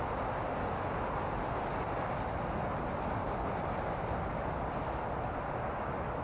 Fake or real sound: real